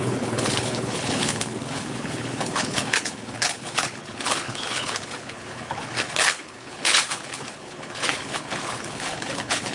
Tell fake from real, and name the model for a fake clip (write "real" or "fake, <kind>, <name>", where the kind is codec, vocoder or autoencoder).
fake, codec, HILCodec